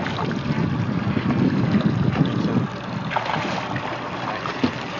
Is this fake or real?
real